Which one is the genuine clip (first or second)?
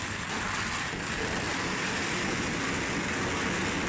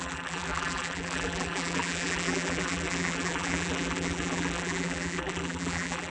first